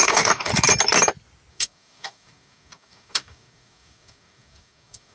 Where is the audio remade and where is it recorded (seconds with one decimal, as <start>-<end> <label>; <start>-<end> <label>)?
0.0-0.5 remade; 0.5-1.5 recorded; 1.5-5.1 remade